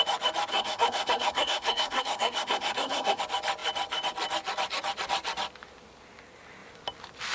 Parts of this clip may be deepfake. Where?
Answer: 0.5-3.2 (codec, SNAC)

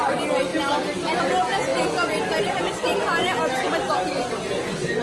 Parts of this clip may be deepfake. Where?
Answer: none

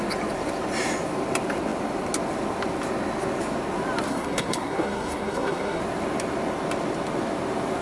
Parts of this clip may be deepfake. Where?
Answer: 4.1-5.8 (codec, SNAC)